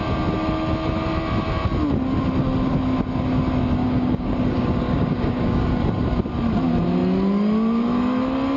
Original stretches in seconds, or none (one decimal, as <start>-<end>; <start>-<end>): 0.0-3.8; 5.7-8.6